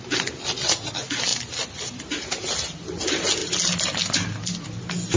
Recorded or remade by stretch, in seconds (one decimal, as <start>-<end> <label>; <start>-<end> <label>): 0.0-5.2 recorded